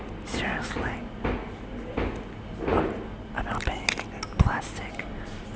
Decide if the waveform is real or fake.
real